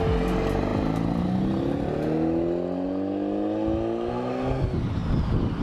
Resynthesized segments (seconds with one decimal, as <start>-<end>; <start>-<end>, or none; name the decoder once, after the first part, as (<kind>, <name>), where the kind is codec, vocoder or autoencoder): 5.0-5.6 (vocoder, BigVGAN v2)